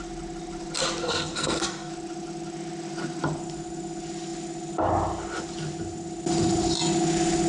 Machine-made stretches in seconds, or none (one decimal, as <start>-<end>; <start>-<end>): 1.0-1.9